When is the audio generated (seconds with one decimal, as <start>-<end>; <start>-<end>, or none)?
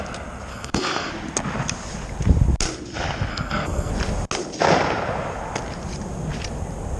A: 0.5-1.1; 3.3-3.9